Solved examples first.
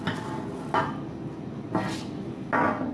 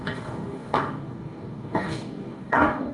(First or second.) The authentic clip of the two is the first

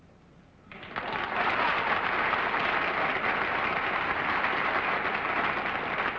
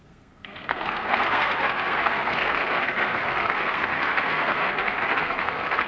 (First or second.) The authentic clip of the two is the first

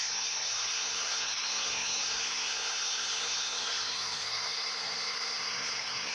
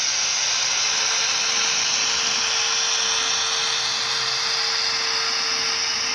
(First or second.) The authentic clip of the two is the second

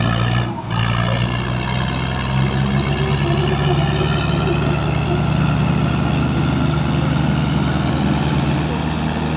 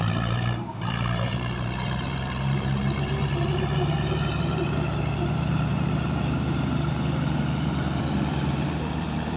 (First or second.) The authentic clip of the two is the first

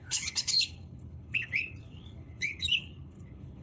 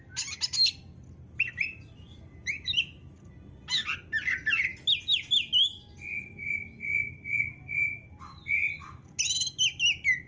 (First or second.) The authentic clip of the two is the second